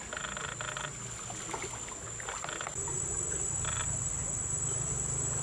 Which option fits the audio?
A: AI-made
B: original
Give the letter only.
B